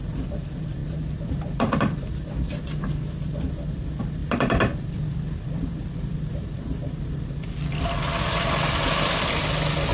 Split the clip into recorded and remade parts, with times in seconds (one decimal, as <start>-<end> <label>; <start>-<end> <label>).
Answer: 0.0-0.8 recorded; 0.8-2.8 remade; 2.8-4.2 recorded; 4.2-9.4 remade; 9.4-9.9 recorded